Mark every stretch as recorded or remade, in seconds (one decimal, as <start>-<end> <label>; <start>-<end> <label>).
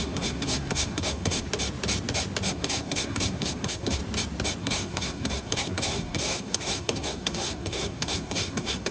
0.0-1.5 remade; 1.5-2.5 recorded; 2.5-4.0 remade; 4.0-4.6 recorded; 4.6-8.9 remade